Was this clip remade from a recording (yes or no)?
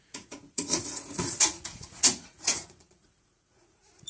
yes